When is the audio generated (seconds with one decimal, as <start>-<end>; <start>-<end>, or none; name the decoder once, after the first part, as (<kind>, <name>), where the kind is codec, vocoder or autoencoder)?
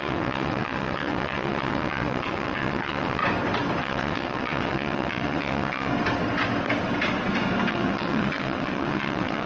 0.0-3.2 (vocoder, WaveNeXt); 3.8-5.9; 7.7-9.5